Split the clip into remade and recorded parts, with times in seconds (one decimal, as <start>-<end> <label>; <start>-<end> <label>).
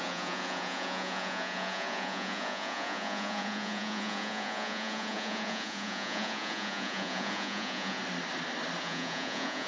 0.0-8.0 remade; 8.0-8.8 recorded; 8.8-9.7 remade